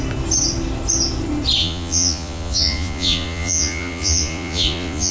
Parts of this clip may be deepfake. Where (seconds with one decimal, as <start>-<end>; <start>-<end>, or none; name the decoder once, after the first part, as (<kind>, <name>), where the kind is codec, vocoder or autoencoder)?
1.6-5.1 (vocoder, Vocos)